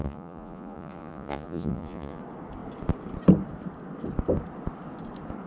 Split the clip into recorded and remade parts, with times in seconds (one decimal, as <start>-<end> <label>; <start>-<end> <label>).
0.0-2.2 remade; 2.2-5.5 recorded